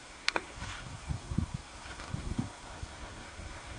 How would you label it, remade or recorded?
remade